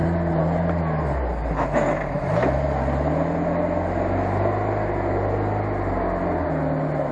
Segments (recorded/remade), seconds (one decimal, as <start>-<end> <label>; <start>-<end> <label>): 0.0-7.1 recorded